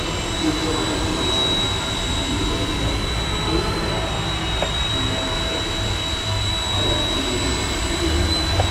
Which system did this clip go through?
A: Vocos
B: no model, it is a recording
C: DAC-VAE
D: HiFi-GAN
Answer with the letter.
B